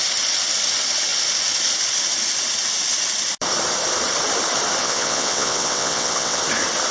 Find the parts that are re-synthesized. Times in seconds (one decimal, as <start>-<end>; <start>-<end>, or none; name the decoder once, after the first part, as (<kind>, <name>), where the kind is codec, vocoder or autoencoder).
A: 4.8-6.4 (vocoder, WaveNeXt)